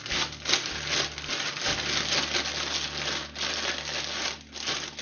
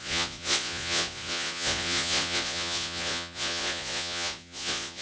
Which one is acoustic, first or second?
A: first